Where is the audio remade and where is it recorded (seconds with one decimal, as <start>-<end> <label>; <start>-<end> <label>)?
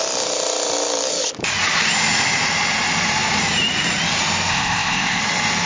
0.0-4.5 recorded; 4.5-5.2 remade; 5.2-5.7 recorded